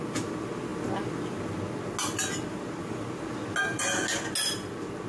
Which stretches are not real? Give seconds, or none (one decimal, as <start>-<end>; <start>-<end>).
none